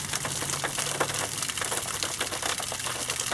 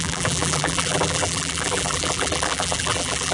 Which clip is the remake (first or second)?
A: second